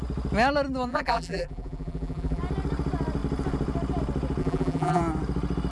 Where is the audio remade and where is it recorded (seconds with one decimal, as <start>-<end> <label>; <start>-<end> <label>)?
0.0-0.9 recorded; 0.9-2.4 remade; 2.4-4.4 recorded; 4.4-5.0 remade; 5.0-5.7 recorded